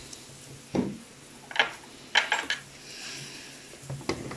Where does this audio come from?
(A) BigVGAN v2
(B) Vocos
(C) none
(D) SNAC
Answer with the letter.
C